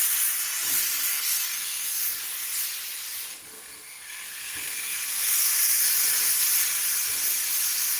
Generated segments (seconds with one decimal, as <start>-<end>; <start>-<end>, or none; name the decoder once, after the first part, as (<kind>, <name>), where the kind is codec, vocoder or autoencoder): 1.1-2.2 (codec, SNAC); 3.3-5.8